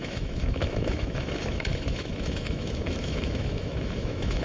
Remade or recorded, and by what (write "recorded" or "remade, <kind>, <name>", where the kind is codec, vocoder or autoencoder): remade, autoencoder, DAC-VAE